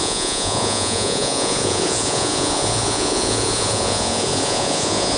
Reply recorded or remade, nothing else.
remade